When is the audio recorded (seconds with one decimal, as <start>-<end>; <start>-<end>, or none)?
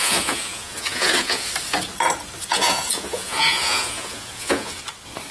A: 1.5-2.5; 4.8-5.3